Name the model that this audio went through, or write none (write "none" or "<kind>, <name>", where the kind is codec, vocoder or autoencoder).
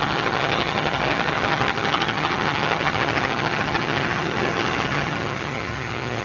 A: vocoder, HiFi-GAN